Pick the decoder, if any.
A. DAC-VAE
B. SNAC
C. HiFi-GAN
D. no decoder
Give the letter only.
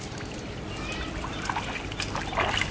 D